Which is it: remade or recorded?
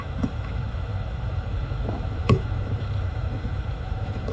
remade